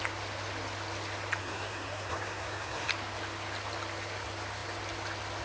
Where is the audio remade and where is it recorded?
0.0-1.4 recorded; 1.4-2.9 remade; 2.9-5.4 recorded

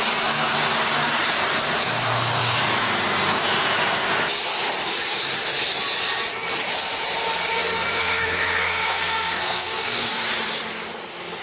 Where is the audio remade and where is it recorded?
0.0-8.0 recorded; 8.0-10.1 remade; 10.1-11.4 recorded

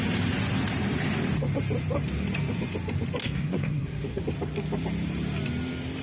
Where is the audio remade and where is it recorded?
0.0-3.2 recorded; 3.2-4.2 remade; 4.2-6.0 recorded